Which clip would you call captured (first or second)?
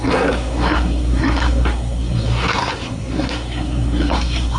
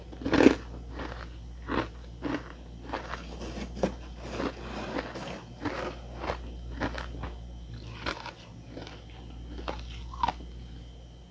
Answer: second